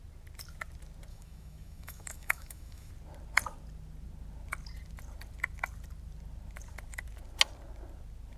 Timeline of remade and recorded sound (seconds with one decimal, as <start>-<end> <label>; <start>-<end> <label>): 0.0-1.1 recorded; 1.1-2.9 remade; 2.9-8.4 recorded